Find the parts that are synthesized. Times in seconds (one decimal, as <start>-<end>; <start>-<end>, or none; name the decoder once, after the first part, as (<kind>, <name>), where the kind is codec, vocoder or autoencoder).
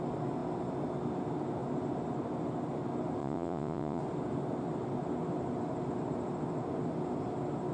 3.2-4.0 (vocoder, Vocos)